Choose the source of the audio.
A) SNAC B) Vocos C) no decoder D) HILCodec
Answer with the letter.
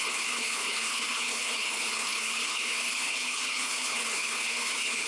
D